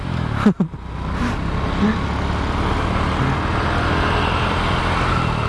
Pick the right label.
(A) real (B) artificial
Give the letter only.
A